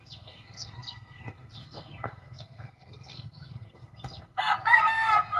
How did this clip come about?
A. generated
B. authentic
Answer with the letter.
A